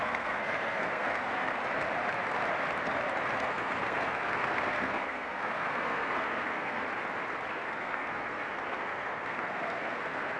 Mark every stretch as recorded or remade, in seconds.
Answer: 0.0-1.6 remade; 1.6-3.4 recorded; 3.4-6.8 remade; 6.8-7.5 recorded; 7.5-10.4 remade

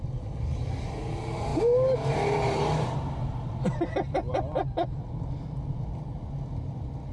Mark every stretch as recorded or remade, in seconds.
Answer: 0.0-7.1 recorded

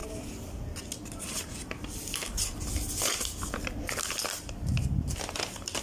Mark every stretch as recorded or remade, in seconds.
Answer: 0.0-3.5 recorded; 3.5-5.8 remade

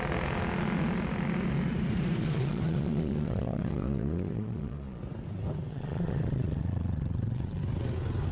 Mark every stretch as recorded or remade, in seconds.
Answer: 0.0-2.2 recorded; 2.2-5.0 remade; 5.0-5.7 recorded; 5.7-7.6 remade; 7.6-8.3 recorded

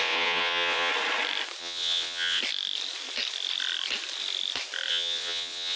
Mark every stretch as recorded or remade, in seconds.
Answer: 0.0-0.9 remade; 0.9-1.6 recorded; 1.6-2.4 remade; 2.4-4.9 recorded; 4.9-5.8 remade